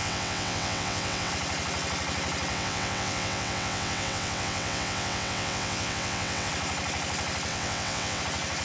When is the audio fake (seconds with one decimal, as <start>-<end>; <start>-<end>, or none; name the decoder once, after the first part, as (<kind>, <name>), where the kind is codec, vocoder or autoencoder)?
0.0-1.3 (vocoder, WaveNeXt); 2.5-6.5; 7.5-8.2